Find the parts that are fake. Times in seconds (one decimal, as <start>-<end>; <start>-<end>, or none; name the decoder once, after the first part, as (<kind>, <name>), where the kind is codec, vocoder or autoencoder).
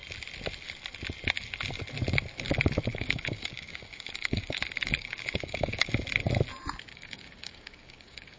2.9-5.9 (codec, DAC); 6.9-8.4